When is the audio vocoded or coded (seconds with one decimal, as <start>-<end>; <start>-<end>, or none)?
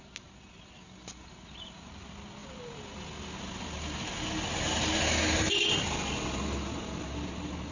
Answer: none